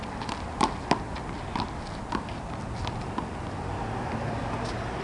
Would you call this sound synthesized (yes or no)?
no